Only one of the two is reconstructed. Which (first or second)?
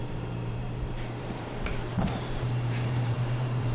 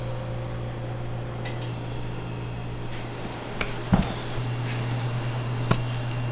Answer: first